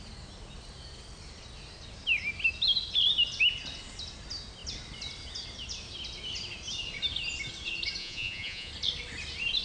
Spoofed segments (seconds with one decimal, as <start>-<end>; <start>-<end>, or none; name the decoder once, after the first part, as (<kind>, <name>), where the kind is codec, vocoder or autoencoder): 8.0-8.7 (vocoder, Vocos)